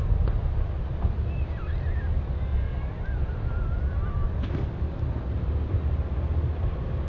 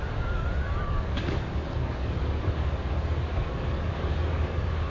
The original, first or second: first